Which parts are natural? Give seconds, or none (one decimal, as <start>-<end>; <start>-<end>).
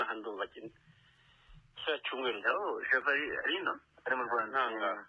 1.4-5.1